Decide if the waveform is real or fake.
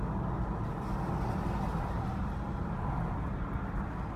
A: real